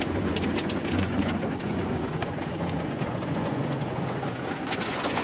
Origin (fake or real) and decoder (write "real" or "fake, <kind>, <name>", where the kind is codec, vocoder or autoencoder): fake, vocoder, Vocos